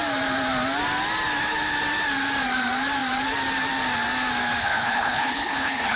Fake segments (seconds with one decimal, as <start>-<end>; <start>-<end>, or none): 4.6-6.0